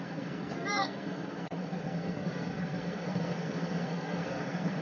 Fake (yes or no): yes